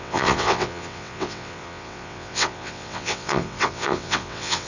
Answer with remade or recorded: remade